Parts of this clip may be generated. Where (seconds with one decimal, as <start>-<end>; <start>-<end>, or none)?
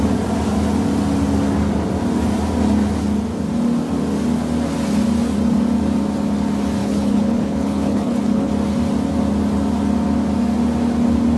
6.8-8.5